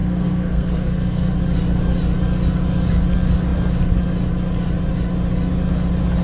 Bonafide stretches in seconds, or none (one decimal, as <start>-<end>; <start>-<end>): 1.3-6.2